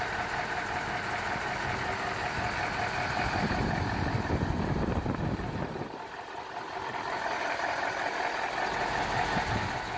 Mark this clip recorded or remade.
recorded